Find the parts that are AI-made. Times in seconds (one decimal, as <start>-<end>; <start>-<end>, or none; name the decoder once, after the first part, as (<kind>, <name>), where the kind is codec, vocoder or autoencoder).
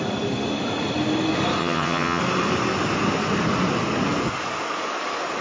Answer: 1.6-2.2 (vocoder, HiFi-GAN)